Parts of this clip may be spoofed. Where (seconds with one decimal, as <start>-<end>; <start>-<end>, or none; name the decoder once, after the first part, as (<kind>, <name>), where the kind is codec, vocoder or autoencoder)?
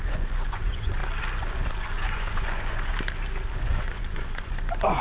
0.0-1.0 (vocoder, Vocos); 1.7-2.9; 3.5-5.0